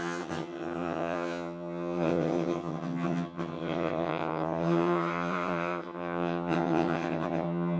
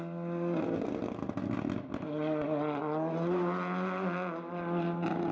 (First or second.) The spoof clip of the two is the first